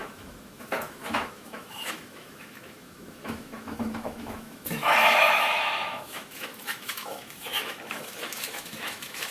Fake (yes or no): yes